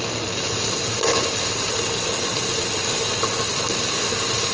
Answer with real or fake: real